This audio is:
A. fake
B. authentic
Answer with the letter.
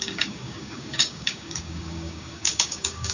A